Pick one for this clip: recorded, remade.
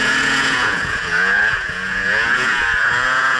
remade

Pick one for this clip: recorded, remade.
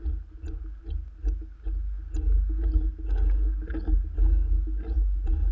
recorded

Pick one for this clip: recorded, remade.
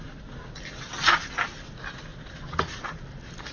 recorded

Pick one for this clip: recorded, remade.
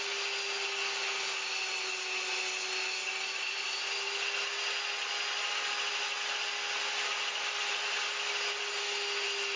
recorded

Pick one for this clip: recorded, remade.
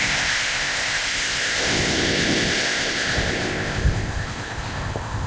remade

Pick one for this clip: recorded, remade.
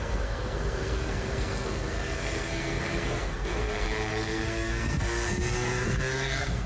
remade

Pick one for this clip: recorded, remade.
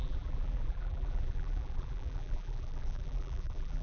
remade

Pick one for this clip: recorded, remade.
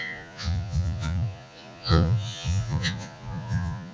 remade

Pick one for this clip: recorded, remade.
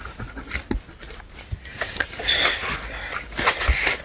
recorded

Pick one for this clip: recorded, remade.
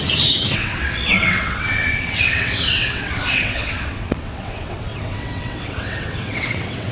remade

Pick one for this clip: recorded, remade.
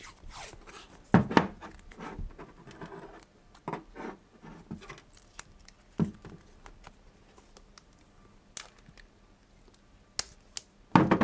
recorded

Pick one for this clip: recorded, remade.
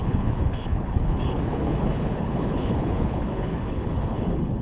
remade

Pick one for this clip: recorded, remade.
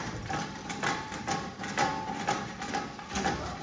remade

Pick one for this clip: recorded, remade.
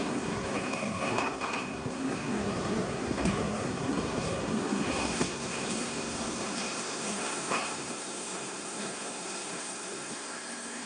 remade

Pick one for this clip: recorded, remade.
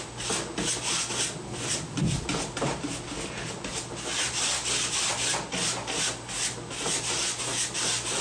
recorded